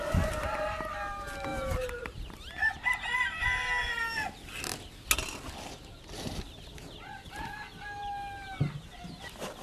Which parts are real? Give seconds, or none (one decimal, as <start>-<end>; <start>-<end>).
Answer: 0.0-1.5; 2.3-9.6